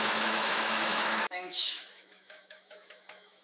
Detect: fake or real fake